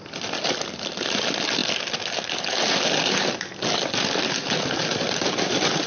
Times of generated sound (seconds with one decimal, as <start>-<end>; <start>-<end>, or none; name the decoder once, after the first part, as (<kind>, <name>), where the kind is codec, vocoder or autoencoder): none